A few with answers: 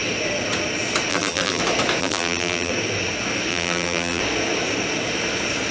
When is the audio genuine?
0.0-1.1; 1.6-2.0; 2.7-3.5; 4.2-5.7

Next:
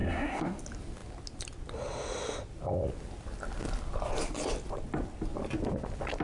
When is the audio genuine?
0.6-6.2

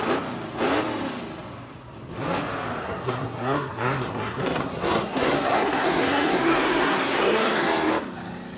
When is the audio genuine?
0.0-2.8; 7.9-8.6

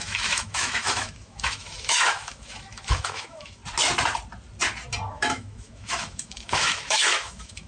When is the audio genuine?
3.6-5.1

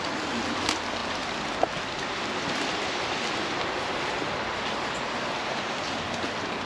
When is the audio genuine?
0.0-6.7

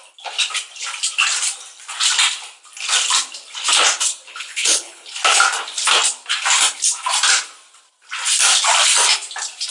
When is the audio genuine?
0.0-4.3; 5.1-9.7

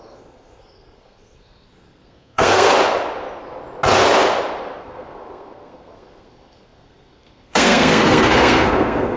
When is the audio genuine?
2.7-4.8